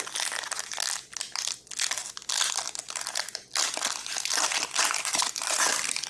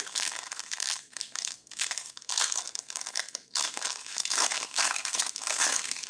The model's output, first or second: second